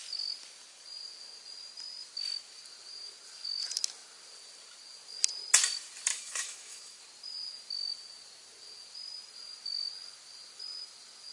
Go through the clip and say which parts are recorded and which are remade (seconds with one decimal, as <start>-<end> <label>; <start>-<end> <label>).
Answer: 0.0-6.1 recorded; 6.1-7.0 remade; 7.0-11.3 recorded